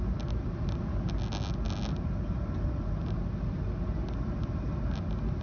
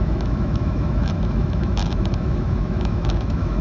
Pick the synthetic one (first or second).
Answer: second